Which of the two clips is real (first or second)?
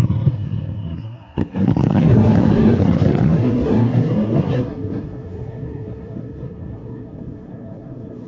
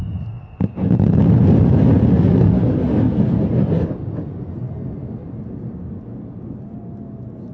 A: second